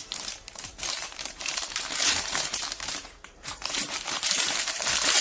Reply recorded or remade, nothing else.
remade